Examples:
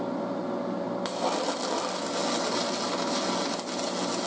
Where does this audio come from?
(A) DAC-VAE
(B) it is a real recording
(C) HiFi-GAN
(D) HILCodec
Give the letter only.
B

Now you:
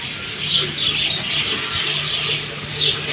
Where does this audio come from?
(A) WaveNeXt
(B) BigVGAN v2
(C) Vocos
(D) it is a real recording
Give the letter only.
D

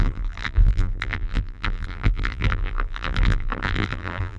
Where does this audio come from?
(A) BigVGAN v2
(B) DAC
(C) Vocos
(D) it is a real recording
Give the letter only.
A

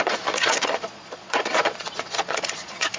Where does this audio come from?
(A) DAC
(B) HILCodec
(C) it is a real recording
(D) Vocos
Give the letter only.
D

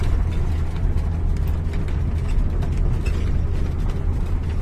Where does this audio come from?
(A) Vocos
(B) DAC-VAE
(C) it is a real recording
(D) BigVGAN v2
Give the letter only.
C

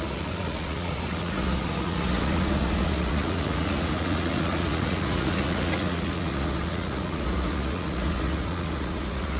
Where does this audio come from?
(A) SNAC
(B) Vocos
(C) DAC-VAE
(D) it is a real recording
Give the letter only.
B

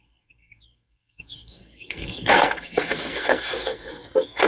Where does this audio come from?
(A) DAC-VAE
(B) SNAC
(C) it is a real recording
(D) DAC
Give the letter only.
B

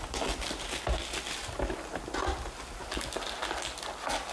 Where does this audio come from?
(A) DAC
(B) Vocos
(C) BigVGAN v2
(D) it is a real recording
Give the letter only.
D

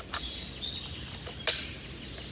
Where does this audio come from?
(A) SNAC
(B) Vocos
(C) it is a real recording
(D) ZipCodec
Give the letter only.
C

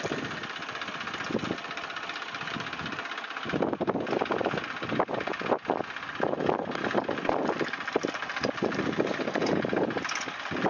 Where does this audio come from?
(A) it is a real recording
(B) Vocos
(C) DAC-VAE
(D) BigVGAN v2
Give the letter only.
A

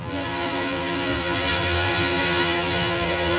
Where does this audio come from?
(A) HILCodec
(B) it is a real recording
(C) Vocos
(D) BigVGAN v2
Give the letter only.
D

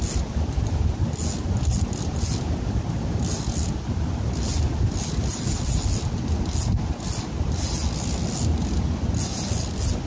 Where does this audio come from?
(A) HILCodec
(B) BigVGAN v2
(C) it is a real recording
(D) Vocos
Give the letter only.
C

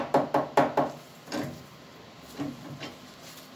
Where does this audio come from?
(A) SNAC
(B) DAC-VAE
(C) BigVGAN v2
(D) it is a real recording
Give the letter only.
D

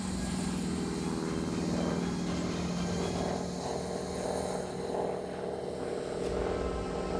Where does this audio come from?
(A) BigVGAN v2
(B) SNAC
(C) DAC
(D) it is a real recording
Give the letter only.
D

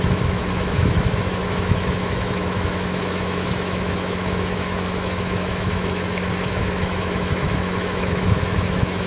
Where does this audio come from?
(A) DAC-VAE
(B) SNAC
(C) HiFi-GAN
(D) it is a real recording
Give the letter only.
A